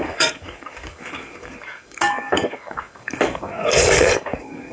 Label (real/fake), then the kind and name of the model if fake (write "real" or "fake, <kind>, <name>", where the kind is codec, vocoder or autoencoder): fake, codec, DAC